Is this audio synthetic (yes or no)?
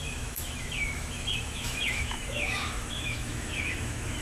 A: yes